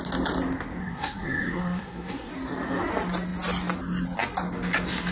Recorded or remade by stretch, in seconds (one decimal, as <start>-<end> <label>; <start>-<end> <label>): 0.0-0.8 recorded; 0.8-2.3 remade; 2.3-5.1 recorded